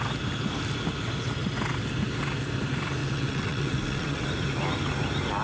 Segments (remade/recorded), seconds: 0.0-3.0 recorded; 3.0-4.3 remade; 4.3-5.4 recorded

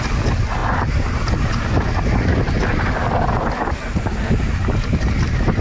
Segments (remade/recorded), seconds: 0.0-5.6 recorded

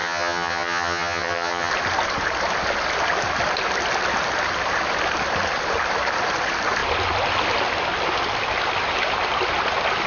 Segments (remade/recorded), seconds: 0.0-1.7 remade; 1.7-10.1 recorded

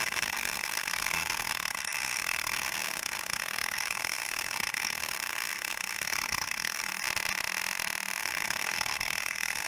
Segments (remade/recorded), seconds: 0.0-6.9 remade; 6.9-8.2 recorded; 8.2-9.7 remade

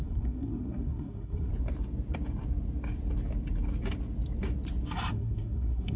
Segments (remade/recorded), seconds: 0.0-1.5 remade; 1.5-5.1 recorded; 5.1-6.0 remade

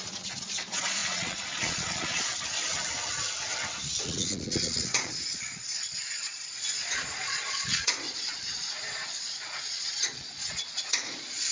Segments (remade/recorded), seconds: 0.0-2.3 remade; 2.3-4.0 recorded; 4.0-11.5 remade